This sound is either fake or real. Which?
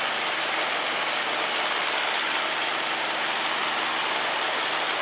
real